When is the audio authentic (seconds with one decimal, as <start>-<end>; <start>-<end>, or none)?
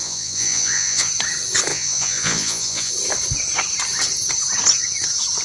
1.1-1.7; 2.9-5.4